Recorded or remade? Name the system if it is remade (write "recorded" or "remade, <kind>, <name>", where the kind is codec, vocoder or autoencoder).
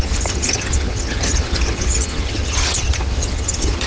remade, vocoder, HiFi-GAN